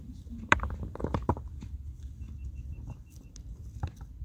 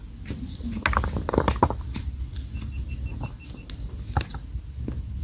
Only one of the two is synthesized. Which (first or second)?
first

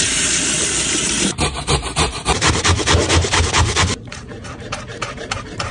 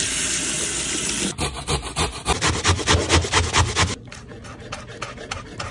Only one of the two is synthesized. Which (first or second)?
first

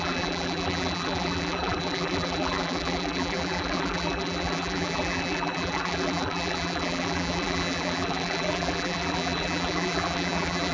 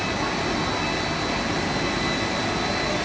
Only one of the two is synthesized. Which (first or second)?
first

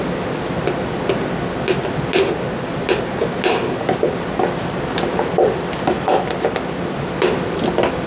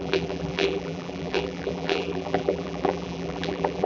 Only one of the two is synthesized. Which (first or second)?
second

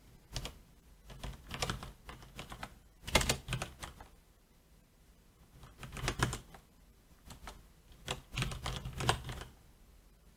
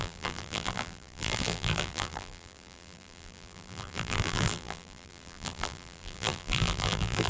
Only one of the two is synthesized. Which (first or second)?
second